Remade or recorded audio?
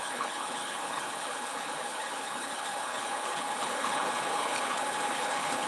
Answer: remade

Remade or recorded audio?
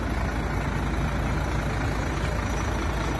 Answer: recorded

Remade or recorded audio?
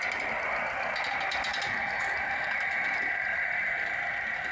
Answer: recorded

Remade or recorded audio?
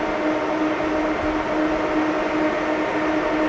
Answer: recorded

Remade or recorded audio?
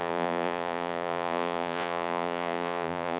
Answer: remade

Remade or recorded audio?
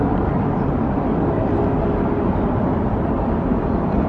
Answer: remade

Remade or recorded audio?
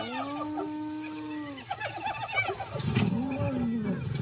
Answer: recorded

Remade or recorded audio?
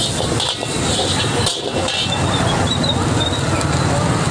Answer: recorded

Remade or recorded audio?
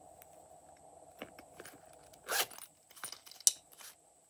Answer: recorded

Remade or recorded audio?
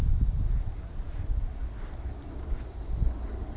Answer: recorded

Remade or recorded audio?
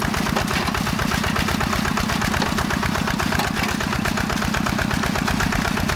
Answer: recorded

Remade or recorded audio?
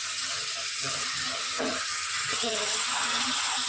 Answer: remade